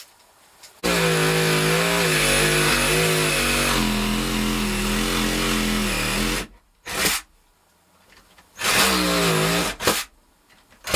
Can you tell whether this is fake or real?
real